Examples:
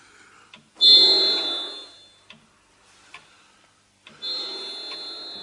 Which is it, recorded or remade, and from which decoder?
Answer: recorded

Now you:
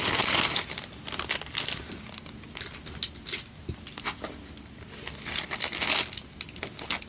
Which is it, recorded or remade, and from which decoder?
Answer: recorded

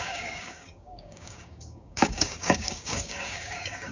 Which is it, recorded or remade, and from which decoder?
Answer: remade, codec, DAC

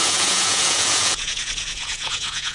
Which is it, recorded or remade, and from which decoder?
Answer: remade, vocoder, Vocos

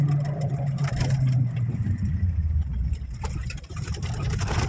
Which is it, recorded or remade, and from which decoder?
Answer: recorded